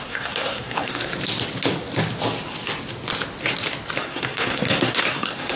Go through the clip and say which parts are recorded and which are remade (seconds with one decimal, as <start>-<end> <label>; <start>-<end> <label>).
0.0-1.1 remade; 1.1-4.0 recorded; 4.0-5.6 remade